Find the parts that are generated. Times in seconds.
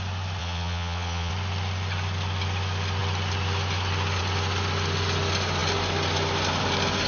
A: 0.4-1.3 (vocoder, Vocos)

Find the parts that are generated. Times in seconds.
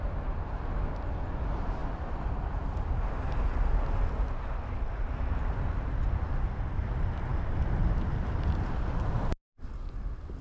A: none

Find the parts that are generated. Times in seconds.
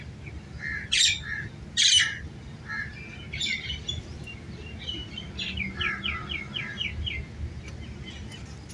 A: none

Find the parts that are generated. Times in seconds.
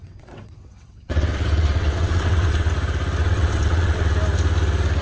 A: 0.0-2.7 (vocoder, WaveNeXt); 3.2-4.1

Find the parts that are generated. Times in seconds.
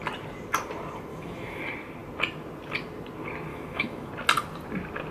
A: 1.1-1.6 (autoencoder, DAC-VAE); 3.5-4.1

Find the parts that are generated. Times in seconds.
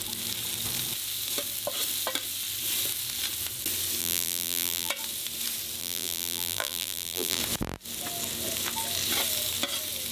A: 4.0-4.9 (vocoder, BigVGAN v2); 5.8-7.4